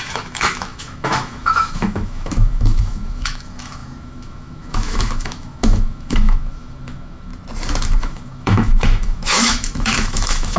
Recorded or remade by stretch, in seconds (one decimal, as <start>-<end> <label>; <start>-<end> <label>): 0.0-7.3 remade; 7.3-8.0 recorded; 8.0-10.6 remade